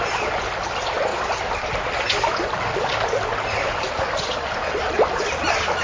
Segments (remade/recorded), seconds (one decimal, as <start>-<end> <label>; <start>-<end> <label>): 0.0-5.8 recorded